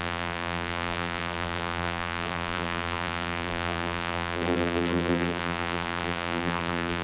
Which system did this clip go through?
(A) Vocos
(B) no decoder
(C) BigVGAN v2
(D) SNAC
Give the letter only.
C